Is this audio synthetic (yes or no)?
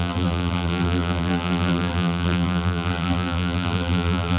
yes